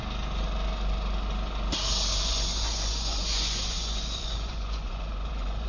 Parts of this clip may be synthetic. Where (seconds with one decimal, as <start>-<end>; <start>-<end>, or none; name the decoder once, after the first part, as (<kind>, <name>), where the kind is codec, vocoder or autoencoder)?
2.1-5.7 (vocoder, Vocos)